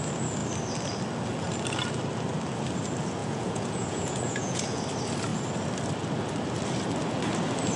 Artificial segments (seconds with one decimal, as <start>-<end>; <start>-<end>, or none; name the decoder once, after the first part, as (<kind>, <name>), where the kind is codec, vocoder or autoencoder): 3.2-4.8 (vocoder, Vocos)